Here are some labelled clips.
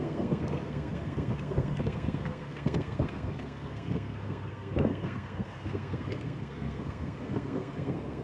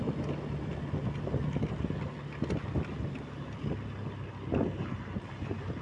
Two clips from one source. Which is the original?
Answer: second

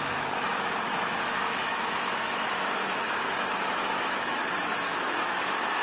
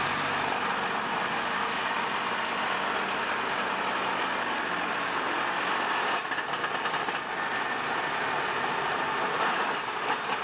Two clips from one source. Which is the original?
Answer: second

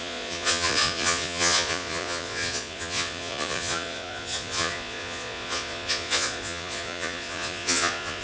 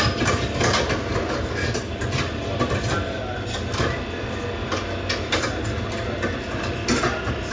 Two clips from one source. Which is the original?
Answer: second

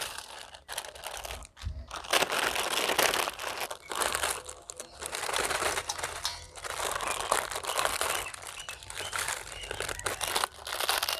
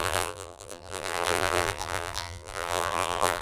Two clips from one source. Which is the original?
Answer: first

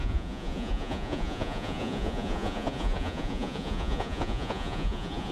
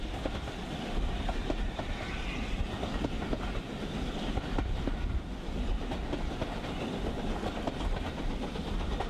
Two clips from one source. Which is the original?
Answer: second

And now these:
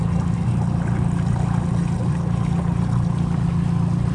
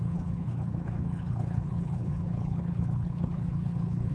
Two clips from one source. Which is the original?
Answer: first